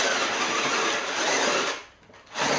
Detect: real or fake real